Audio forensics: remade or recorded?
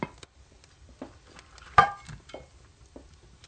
remade